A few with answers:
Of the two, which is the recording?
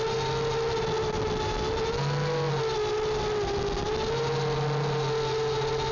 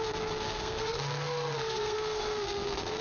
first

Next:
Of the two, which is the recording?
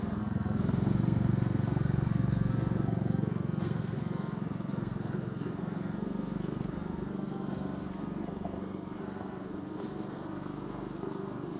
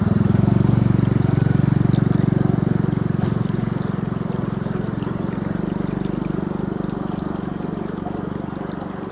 second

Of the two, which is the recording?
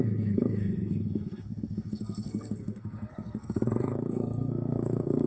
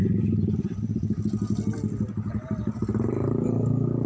second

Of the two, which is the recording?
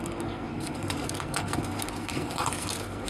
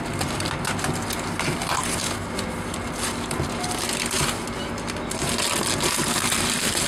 second